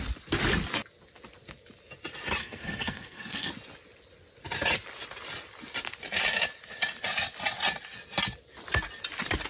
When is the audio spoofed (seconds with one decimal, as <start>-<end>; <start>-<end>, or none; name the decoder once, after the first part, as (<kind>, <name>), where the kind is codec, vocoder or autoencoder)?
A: 2.4-3.5 (codec, SNAC)